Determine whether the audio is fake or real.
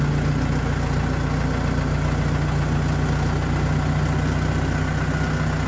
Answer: real